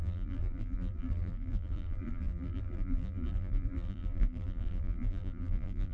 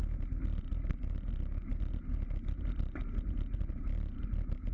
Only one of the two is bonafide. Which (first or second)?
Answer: second